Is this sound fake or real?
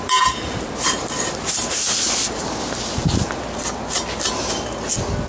real